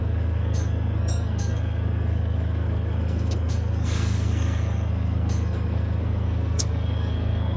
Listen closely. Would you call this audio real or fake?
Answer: fake